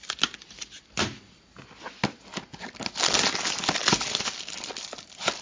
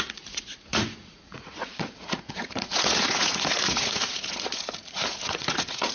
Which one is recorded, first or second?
first